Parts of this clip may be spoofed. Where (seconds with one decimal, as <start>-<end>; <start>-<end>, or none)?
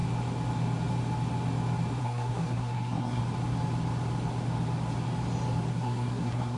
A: 2.0-3.2; 5.7-6.6